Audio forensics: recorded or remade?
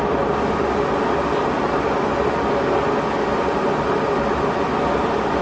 recorded